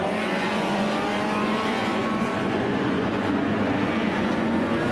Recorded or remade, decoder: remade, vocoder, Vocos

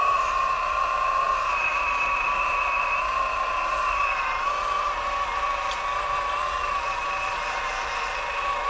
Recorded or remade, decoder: remade, vocoder, BigVGAN v2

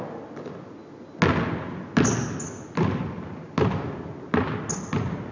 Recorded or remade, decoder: recorded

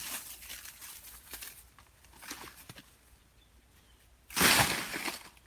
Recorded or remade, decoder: recorded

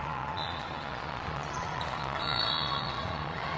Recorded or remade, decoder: remade, vocoder, Vocos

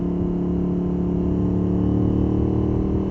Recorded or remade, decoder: recorded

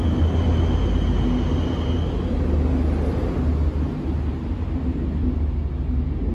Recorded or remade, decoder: recorded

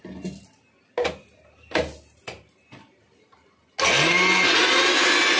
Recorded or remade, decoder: recorded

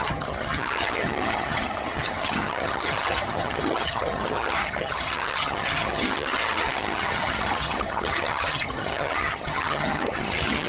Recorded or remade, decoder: remade, vocoder, HiFi-GAN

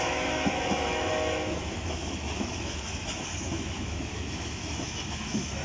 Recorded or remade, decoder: remade, autoencoder, DAC-VAE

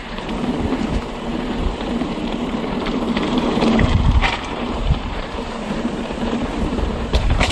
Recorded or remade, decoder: remade, vocoder, BigVGAN v2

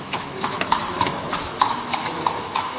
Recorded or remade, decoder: remade, autoencoder, DAC-VAE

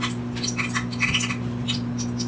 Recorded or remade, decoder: recorded